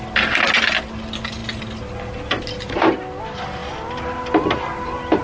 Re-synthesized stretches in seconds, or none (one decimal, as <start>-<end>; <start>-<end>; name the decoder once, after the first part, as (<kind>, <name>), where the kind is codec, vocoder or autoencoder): none